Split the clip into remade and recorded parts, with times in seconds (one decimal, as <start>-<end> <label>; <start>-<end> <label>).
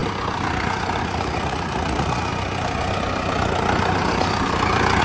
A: 0.0-1.0 recorded; 1.0-2.3 remade; 2.3-5.0 recorded